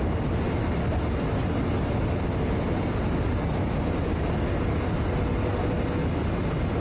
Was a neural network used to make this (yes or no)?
no